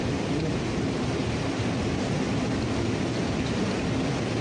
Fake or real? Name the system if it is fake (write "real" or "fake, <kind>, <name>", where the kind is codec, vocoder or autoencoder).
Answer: real